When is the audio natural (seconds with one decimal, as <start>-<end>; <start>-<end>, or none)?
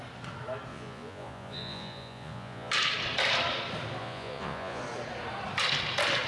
0.0-0.7; 2.7-4.0; 4.8-6.3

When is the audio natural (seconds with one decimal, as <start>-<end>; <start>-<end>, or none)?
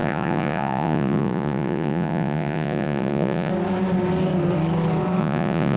3.5-5.2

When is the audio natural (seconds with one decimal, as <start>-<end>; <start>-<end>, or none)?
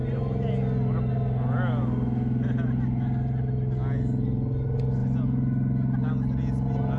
0.0-7.0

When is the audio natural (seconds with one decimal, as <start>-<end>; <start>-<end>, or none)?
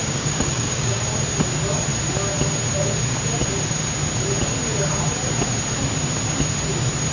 1.0-7.1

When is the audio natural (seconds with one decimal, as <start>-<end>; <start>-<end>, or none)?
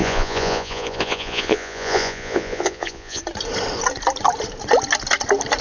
3.2-5.6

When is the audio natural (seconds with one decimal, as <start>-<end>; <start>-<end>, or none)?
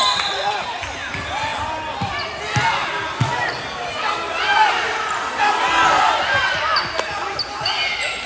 0.0-8.3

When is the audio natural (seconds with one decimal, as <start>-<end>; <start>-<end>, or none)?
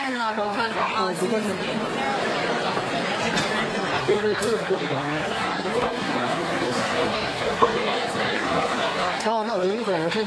0.9-4.0